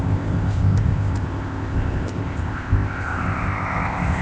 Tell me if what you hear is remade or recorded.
remade